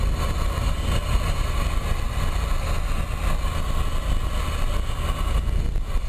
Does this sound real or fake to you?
real